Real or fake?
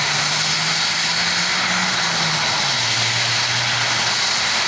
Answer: real